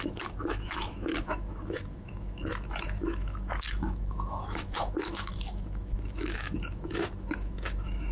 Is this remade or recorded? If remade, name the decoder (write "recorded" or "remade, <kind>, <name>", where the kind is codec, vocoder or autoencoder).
remade, autoencoder, DAC-VAE